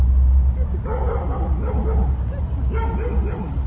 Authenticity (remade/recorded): recorded